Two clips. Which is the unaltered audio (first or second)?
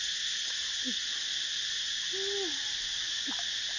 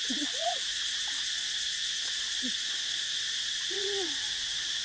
first